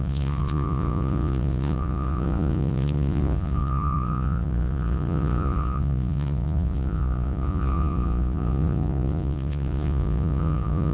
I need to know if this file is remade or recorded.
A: remade